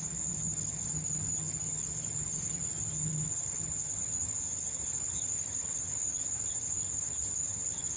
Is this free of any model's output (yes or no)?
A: no